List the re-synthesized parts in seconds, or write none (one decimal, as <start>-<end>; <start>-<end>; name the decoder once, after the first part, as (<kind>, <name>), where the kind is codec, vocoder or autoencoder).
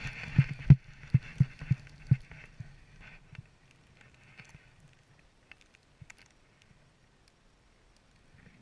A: none